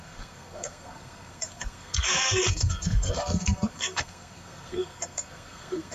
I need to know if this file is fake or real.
fake